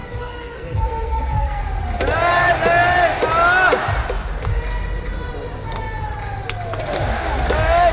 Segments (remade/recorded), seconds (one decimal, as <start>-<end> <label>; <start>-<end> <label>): 0.0-1.6 remade; 1.6-7.9 recorded